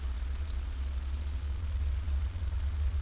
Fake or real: fake